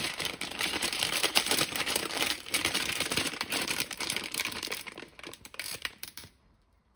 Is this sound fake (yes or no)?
yes